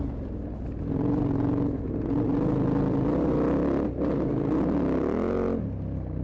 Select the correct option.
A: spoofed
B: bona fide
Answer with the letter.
B